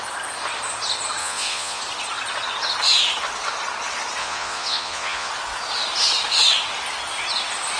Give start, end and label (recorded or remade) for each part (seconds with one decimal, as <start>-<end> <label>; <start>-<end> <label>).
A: 0.0-1.2 recorded; 1.2-1.8 remade; 1.8-4.2 recorded; 4.2-5.3 remade; 5.3-7.8 recorded